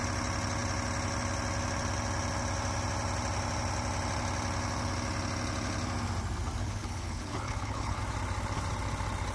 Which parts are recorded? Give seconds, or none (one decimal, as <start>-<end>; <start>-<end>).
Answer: 0.0-6.6; 8.0-9.3